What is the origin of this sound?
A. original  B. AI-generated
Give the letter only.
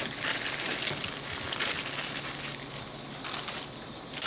A